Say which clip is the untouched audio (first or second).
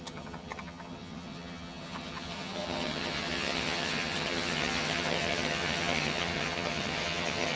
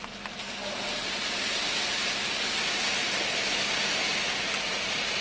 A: second